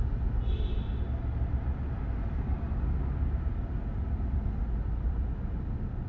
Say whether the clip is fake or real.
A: real